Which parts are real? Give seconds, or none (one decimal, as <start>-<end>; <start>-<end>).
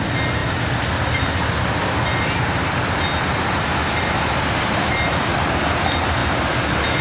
0.0-0.4; 1.2-7.0